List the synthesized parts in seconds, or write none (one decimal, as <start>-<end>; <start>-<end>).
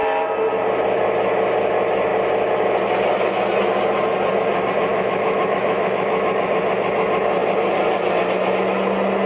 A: 4.9-6.6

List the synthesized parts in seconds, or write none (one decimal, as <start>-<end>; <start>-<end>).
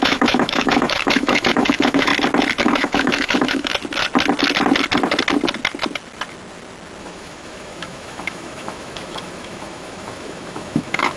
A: 0.0-2.1; 2.6-3.7; 7.0-11.2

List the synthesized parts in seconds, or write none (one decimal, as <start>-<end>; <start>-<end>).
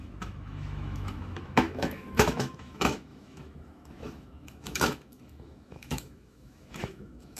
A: 0.0-7.4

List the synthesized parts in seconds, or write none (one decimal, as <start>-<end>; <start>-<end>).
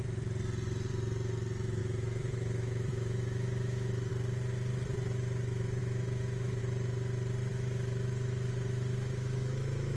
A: 1.8-4.1; 5.8-6.6; 7.5-10.0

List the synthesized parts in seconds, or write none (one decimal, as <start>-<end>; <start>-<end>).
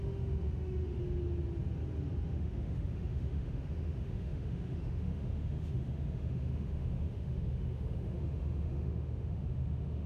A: 0.0-1.0; 2.3-10.1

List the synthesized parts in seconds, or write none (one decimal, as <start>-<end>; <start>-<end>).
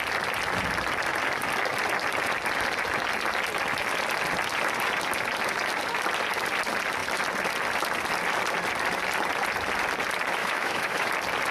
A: 10.4-11.1